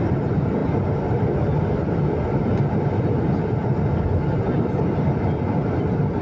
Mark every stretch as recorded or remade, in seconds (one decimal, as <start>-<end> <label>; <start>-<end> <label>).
0.0-6.2 recorded